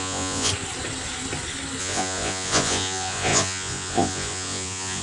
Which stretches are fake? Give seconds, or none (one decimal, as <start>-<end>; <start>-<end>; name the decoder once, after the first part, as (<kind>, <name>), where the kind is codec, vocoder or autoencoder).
0.0-0.5 (vocoder, Vocos); 1.8-5.0